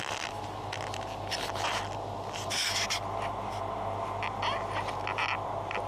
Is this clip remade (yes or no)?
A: no